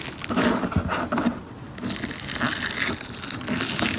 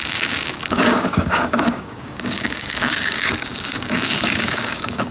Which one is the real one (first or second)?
first